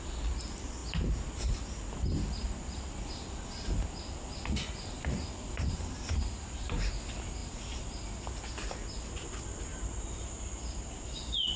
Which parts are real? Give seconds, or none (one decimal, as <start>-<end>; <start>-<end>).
0.0-9.7; 10.3-11.6